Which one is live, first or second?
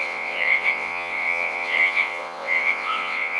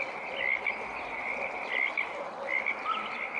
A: second